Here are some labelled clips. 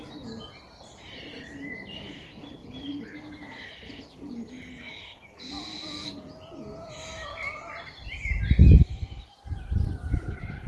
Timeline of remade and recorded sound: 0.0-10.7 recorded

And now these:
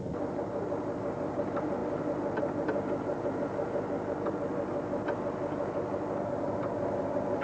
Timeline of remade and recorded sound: 0.0-7.4 recorded